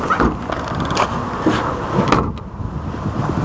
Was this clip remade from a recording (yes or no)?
no